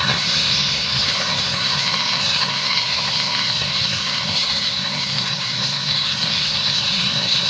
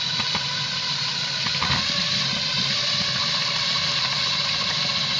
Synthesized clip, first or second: first